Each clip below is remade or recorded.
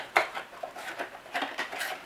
recorded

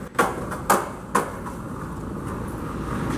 recorded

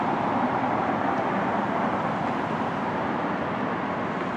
remade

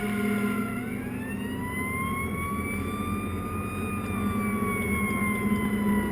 recorded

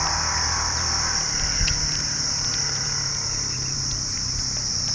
remade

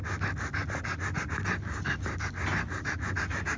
recorded